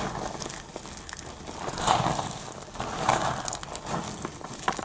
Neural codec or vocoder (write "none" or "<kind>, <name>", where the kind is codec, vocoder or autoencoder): none